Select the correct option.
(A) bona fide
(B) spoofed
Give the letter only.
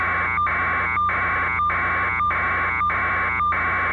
A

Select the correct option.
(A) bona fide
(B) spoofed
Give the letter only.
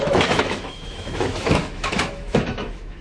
B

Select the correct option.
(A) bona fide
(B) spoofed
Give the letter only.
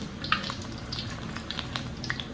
A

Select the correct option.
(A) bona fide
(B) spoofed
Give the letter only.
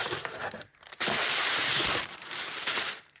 B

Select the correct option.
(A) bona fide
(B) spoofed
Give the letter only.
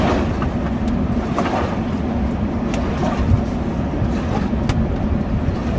A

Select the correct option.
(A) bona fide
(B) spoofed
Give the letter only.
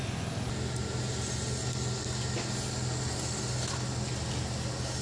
A